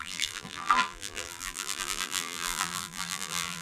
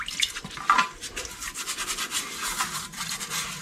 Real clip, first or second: second